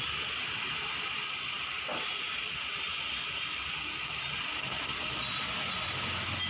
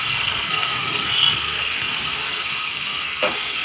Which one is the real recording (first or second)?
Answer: first